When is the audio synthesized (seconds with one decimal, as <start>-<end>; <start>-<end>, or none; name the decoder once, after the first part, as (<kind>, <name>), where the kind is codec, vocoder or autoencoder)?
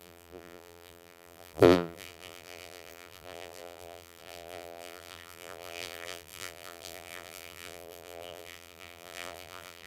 0.0-9.9 (vocoder, BigVGAN v2)